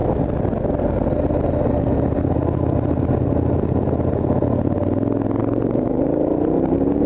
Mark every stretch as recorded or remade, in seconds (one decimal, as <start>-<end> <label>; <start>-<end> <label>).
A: 0.0-5.4 recorded; 5.4-7.1 remade